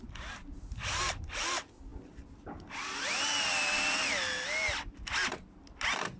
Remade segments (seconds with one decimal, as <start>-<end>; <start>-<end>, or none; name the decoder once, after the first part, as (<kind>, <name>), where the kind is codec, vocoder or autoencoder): none